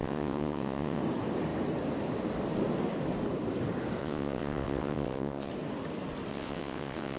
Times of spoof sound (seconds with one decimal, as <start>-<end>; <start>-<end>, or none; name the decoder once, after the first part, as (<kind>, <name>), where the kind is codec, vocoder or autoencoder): 0.0-1.0 (vocoder, WaveNeXt); 4.0-5.5; 6.3-7.2